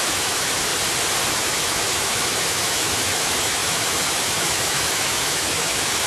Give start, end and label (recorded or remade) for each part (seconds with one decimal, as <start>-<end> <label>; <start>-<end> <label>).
0.0-0.7 remade; 0.7-1.3 recorded; 1.3-6.1 remade